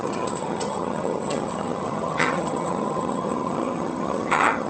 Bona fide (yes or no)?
no